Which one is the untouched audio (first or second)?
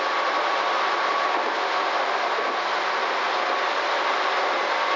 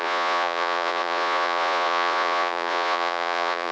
first